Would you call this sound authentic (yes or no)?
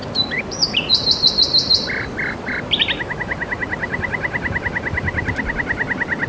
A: no